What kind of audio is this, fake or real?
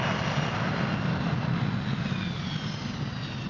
real